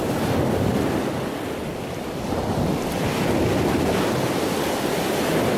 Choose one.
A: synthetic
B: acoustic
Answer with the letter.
B